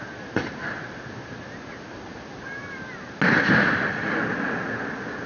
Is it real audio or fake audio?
real